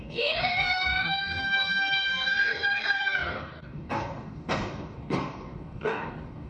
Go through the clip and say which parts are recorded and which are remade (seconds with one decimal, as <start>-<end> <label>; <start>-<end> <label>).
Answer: 0.0-6.5 remade